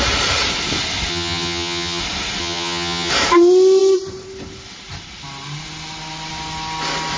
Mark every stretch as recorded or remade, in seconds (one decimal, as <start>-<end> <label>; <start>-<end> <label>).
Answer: 0.0-1.1 recorded; 1.1-2.0 remade; 2.0-2.4 recorded; 2.4-3.1 remade; 3.1-7.2 recorded